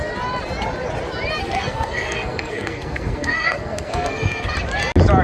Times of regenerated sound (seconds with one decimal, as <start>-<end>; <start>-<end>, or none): 1.4-4.5

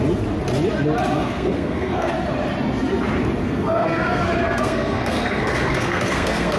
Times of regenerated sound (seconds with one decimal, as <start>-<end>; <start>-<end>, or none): 1.1-2.1; 3.4-6.6

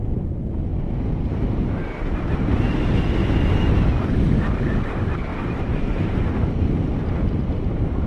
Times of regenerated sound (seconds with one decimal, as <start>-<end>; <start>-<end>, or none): 0.7-3.0; 5.3-6.3

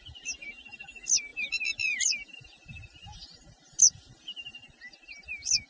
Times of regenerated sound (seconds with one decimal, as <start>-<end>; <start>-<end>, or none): none

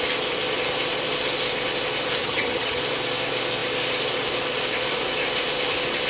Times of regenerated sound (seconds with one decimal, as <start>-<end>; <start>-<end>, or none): 2.2-2.8

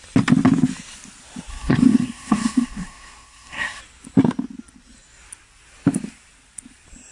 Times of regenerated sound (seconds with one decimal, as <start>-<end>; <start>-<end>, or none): 1.5-3.8

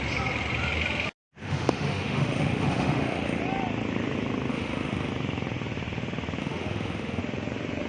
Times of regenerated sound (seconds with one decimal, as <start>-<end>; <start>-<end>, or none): 1.4-3.4; 4.5-5.1; 6.4-7.2

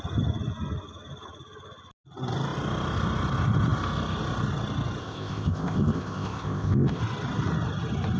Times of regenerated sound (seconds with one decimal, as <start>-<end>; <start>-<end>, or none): 5.0-7.0